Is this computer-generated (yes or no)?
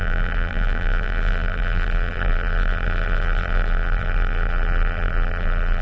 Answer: yes